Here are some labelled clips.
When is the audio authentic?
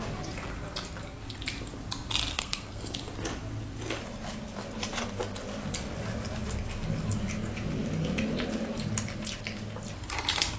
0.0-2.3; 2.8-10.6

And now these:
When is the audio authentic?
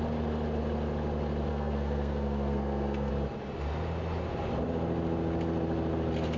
0.0-1.5; 3.1-6.4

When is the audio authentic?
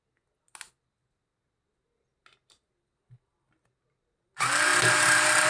0.0-5.5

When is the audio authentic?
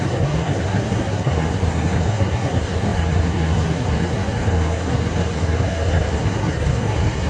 none